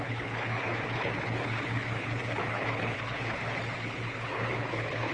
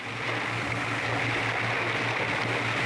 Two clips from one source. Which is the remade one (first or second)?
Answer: first